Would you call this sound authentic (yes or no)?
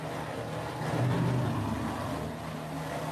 yes